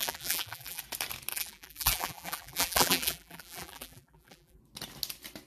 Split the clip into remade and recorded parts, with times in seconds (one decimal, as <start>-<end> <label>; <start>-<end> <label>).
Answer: 0.0-0.8 remade; 0.8-1.3 recorded; 1.3-4.6 remade; 4.6-5.5 recorded